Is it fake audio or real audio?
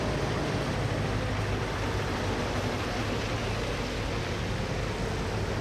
real